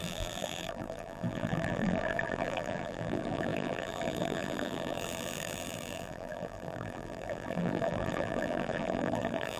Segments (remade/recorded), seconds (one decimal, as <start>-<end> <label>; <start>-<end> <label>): 0.0-9.6 remade

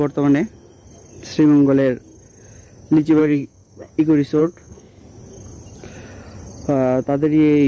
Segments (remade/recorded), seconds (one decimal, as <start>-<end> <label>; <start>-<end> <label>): 0.0-3.2 recorded; 3.2-3.9 remade; 3.9-4.4 recorded; 4.4-5.0 remade; 5.0-7.7 recorded

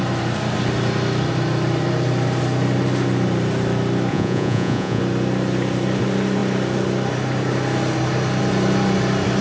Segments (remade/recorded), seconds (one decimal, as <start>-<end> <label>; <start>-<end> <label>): 0.0-4.1 recorded; 4.1-5.0 remade; 5.0-9.4 recorded

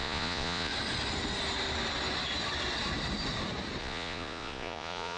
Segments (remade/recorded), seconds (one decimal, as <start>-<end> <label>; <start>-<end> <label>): 0.0-0.7 remade; 0.7-3.8 recorded; 3.8-5.2 remade

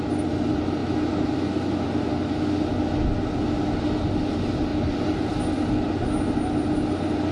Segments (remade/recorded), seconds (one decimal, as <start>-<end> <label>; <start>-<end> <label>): 0.0-4.7 recorded; 4.7-5.5 remade; 5.5-7.3 recorded

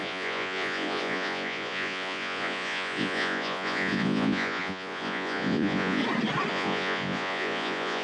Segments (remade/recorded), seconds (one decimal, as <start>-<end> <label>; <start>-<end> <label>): 0.0-6.0 remade; 6.0-6.5 recorded; 6.5-8.0 remade

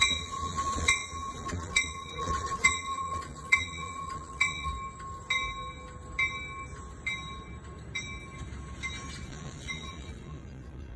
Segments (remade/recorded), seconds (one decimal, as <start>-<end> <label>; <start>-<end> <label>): 0.0-4.7 remade; 4.7-9.3 recorded; 9.3-11.0 remade